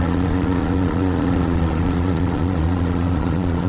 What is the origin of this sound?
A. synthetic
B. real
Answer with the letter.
A